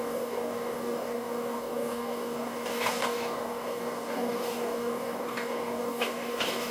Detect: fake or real fake